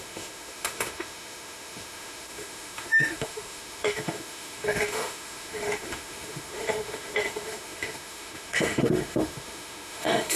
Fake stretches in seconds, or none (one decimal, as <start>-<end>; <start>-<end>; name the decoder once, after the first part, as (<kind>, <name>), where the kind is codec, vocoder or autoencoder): 0.0-10.4 (autoencoder, DAC-VAE)

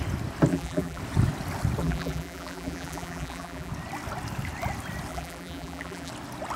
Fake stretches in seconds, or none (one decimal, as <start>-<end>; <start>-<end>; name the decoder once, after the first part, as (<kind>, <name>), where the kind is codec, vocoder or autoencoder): 0.5-1.0 (vocoder, BigVGAN v2); 1.8-3.7; 5.1-6.1

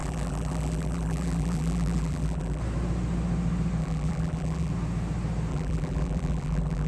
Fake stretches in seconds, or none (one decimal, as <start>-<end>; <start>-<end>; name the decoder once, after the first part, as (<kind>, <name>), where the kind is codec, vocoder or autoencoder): 0.0-2.6 (vocoder, BigVGAN v2); 3.8-4.7; 5.5-6.9

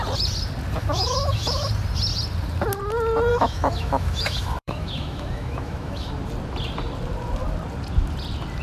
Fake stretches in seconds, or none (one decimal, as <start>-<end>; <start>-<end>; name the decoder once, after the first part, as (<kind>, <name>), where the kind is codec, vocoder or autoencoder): 0.8-1.7 (autoencoder, DAC-VAE); 3.3-6.1

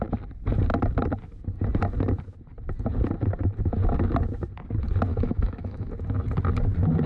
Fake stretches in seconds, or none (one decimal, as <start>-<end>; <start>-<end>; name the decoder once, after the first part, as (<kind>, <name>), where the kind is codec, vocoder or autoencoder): 5.1-5.9 (autoencoder, DAC-VAE)

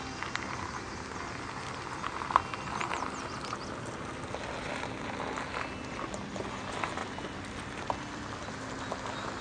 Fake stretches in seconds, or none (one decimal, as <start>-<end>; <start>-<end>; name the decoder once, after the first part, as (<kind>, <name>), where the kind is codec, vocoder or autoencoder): none

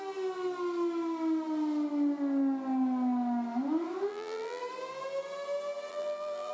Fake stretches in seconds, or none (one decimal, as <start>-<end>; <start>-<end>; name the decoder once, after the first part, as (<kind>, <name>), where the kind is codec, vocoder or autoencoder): 4.1-4.6 (vocoder, BigVGAN v2); 5.9-6.5

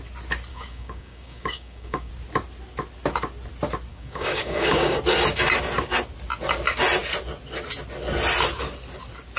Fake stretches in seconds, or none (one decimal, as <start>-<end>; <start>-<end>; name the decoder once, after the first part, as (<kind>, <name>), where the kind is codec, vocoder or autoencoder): 0.5-2.1 (codec, DAC); 3.9-5.0